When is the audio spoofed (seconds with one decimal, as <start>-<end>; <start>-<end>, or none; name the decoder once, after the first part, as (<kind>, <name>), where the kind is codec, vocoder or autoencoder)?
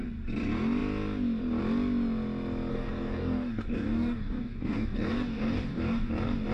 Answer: 2.7-6.1 (codec, DAC)